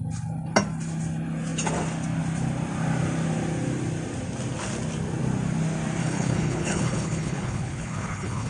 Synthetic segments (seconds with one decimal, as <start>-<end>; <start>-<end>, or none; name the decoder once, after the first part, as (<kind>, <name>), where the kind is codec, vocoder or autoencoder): 6.0-8.5 (codec, HILCodec)